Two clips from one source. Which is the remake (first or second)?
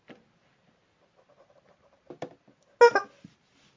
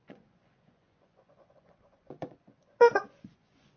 second